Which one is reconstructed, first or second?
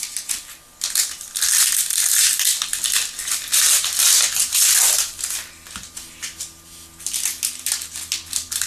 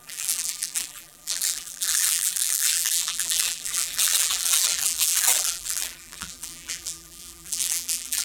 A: second